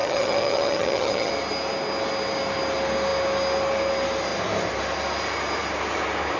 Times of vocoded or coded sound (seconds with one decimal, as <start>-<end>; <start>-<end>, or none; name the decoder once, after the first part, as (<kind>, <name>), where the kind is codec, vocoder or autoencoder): 0.0-1.3 (vocoder, HiFi-GAN)